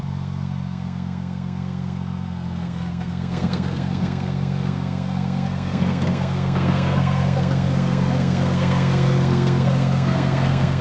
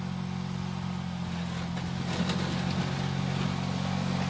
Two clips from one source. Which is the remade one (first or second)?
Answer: first